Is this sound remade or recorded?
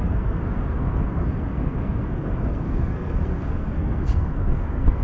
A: remade